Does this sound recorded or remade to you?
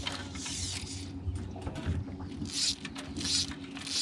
recorded